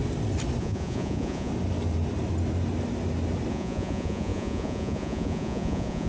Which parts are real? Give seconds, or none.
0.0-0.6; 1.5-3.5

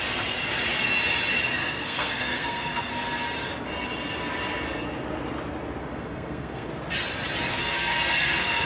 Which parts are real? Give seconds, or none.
0.0-1.6; 2.9-5.8; 6.7-7.5

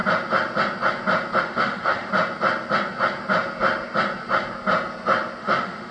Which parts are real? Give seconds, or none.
0.0-1.4; 2.1-5.4

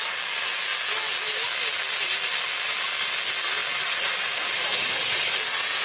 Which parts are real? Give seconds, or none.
0.0-5.8